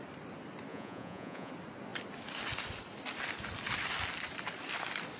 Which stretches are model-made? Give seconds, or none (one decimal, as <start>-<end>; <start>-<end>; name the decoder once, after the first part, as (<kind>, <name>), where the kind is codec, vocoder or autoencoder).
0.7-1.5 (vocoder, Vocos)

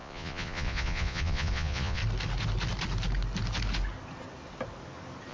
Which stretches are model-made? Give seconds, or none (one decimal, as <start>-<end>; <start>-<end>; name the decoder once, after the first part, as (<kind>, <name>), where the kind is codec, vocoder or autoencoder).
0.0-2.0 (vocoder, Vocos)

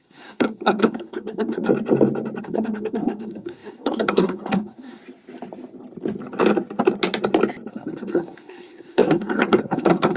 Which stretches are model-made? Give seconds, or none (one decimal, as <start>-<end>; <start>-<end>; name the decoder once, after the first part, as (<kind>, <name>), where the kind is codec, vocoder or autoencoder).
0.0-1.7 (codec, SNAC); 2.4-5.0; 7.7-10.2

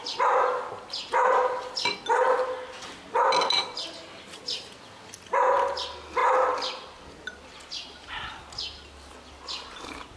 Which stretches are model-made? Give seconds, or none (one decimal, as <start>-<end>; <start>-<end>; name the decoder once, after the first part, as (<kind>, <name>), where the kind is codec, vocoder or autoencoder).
none

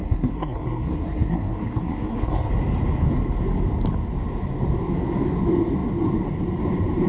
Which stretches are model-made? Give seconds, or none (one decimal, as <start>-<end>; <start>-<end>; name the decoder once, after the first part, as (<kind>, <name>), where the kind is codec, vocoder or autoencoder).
0.0-2.5 (codec, SNAC)

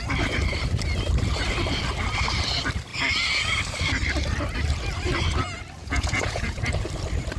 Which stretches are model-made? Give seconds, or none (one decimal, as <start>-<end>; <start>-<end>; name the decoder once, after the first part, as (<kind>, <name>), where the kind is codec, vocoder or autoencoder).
5.8-6.6 (vocoder, Vocos)